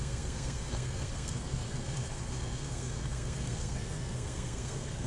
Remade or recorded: remade